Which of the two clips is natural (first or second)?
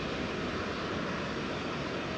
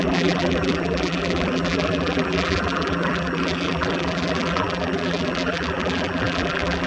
first